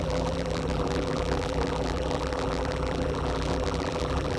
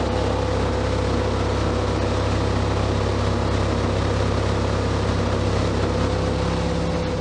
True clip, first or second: second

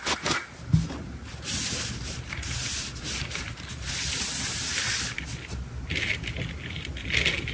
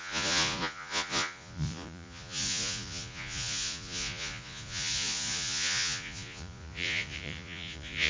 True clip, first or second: first